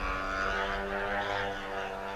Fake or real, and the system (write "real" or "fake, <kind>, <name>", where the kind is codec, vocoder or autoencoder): real